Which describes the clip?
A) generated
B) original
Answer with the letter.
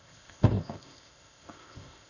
A